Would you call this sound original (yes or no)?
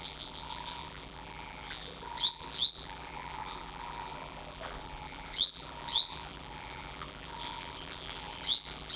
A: no